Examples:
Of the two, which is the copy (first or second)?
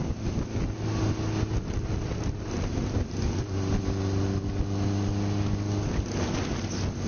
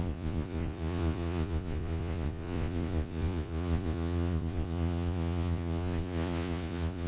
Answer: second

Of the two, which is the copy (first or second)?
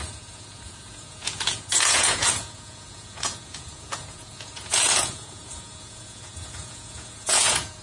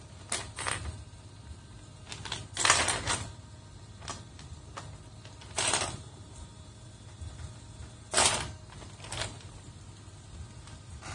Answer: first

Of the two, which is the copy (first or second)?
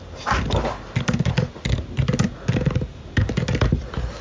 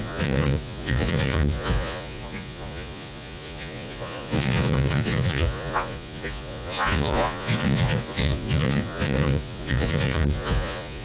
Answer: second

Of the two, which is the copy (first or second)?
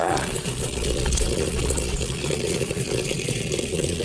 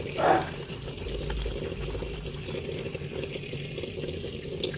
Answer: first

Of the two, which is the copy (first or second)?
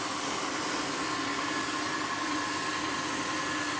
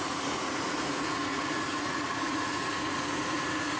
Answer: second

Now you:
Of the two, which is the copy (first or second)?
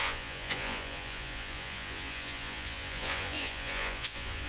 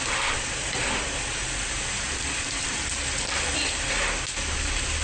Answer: first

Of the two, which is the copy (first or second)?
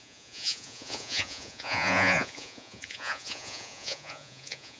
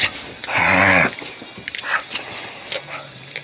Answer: first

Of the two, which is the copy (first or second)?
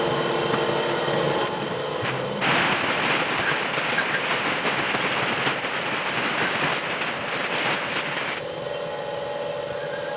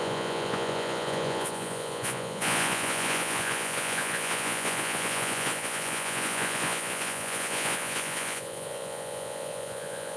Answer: second